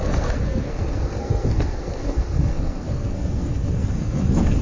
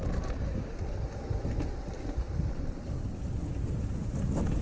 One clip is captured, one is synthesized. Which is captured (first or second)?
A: second